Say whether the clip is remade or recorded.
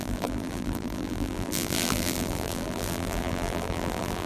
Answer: remade